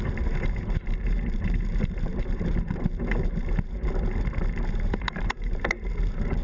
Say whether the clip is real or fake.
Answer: fake